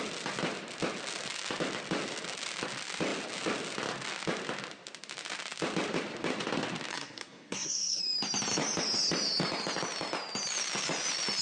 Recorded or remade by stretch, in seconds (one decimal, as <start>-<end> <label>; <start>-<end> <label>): 0.0-6.9 recorded; 6.9-8.0 remade; 8.0-11.4 recorded